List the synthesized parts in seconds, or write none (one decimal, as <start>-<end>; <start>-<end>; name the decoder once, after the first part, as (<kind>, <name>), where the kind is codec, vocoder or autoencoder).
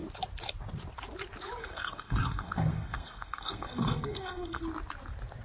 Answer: 1.6-4.6 (codec, SNAC)